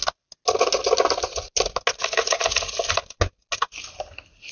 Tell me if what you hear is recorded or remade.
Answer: recorded